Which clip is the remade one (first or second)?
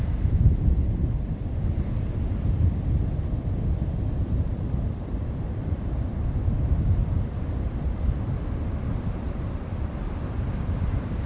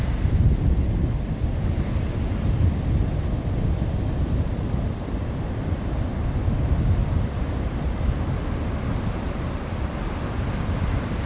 first